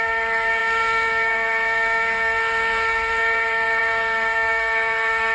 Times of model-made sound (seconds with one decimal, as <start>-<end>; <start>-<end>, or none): 0.0-5.3